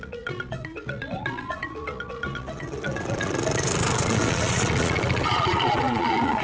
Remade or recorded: remade